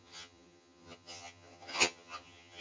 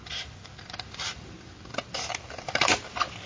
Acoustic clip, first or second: second